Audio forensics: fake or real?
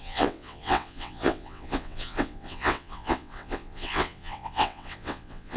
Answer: fake